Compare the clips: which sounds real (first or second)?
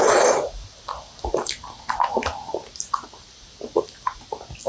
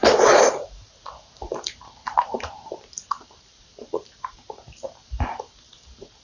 first